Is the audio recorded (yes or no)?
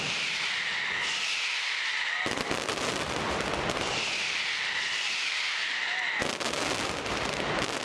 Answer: yes